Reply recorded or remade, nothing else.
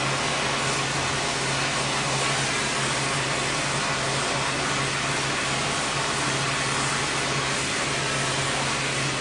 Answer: recorded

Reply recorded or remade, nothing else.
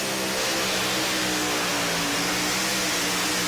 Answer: recorded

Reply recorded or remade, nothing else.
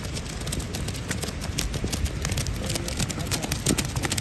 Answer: recorded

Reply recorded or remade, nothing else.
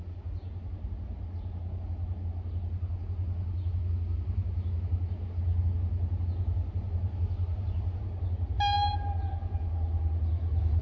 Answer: recorded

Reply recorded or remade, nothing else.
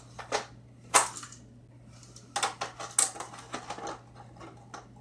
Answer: recorded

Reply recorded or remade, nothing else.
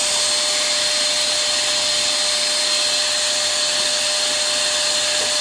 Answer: recorded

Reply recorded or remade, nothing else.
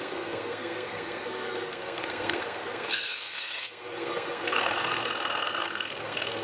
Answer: remade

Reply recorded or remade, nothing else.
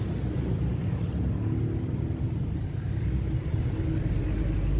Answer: recorded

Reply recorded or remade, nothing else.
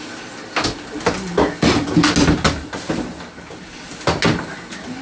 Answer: recorded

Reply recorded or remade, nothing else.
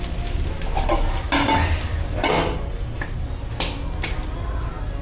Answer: recorded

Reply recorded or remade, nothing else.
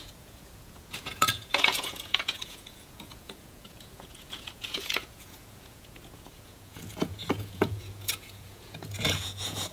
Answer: remade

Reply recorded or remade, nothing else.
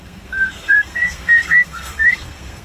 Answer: remade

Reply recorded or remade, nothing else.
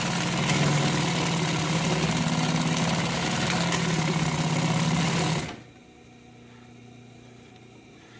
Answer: recorded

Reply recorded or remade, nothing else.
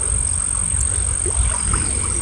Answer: recorded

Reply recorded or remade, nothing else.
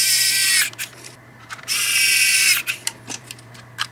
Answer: recorded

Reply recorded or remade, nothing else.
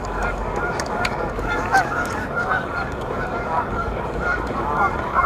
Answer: remade